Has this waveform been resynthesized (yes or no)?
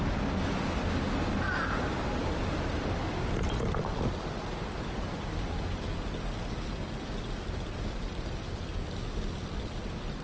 no